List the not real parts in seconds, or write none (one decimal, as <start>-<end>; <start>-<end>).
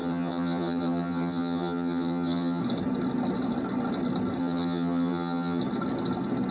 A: 0.0-2.6; 4.4-5.6